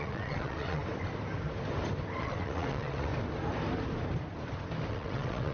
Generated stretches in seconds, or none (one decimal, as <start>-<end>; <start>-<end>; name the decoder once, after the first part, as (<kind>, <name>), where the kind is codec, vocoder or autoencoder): 0.0-0.8 (vocoder, WaveNeXt); 2.2-3.1; 4.9-5.5

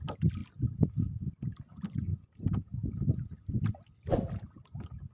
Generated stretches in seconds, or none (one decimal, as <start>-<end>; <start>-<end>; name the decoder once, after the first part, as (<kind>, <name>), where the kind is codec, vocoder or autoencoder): none

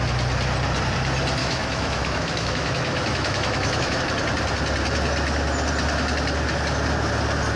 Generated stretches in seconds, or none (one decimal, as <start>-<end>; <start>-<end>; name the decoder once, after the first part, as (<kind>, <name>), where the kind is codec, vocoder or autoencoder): 1.4-4.0 (autoencoder, DAC-VAE)

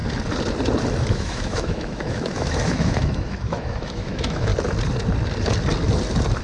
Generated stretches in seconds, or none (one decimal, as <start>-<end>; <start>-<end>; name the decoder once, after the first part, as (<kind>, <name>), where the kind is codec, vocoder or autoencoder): 1.1-4.5 (autoencoder, DAC-VAE)

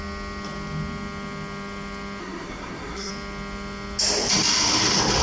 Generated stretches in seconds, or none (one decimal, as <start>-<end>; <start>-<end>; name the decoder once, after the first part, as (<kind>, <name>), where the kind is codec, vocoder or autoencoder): 2.2-3.1 (codec, SNAC)

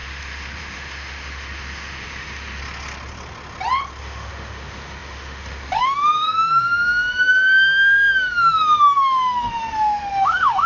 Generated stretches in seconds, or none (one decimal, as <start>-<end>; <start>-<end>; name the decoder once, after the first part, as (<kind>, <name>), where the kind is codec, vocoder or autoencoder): 0.0-2.6 (autoencoder, DAC-VAE); 4.0-10.7

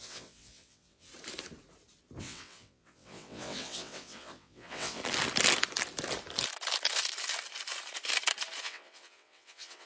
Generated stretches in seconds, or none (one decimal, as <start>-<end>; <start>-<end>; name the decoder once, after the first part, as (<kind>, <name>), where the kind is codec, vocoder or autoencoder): 0.0-1.1 (vocoder, WaveNeXt); 2.2-5.0; 8.6-9.9